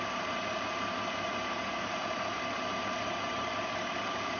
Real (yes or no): yes